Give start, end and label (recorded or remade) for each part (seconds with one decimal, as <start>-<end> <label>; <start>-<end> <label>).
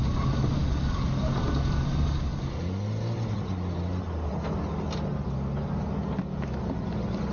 0.0-7.3 recorded